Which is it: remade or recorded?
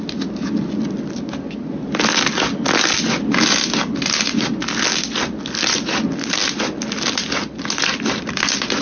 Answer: recorded